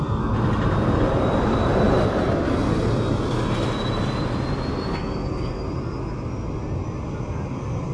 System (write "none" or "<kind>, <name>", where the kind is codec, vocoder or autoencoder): none